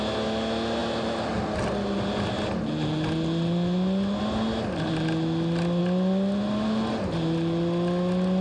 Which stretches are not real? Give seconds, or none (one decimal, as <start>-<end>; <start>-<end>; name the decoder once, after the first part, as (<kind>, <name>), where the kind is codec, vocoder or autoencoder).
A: none

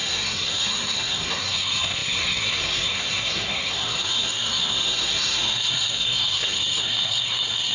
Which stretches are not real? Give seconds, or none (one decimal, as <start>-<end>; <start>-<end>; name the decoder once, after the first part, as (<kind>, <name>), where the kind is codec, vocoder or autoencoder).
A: 0.0-7.7 (codec, SNAC)

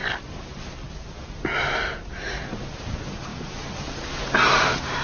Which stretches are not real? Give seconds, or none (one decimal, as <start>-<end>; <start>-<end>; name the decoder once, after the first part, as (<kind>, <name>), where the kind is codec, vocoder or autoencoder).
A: 3.3-4.0 (vocoder, BigVGAN v2)